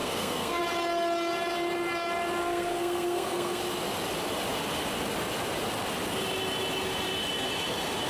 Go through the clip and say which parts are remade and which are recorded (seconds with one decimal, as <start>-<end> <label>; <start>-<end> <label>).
0.0-0.6 remade; 0.6-2.4 recorded; 2.4-3.6 remade; 3.6-8.1 recorded